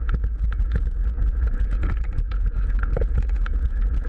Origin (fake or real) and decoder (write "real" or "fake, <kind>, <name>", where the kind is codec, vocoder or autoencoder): fake, vocoder, Vocos